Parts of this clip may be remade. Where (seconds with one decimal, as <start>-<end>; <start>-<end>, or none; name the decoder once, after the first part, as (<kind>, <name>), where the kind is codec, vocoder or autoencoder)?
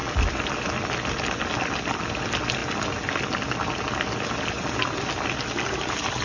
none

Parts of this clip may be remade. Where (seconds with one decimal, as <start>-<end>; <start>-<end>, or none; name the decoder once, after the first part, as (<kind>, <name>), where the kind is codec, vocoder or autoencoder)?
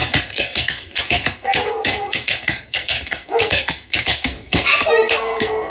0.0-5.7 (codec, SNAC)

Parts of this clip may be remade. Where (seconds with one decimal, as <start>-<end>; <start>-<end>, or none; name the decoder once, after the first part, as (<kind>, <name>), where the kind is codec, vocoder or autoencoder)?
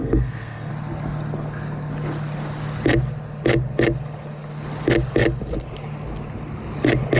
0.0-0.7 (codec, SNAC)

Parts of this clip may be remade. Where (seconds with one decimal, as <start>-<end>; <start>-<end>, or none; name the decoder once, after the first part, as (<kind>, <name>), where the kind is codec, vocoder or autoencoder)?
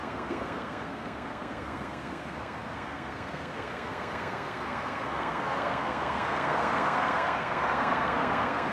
0.0-8.7 (codec, SNAC)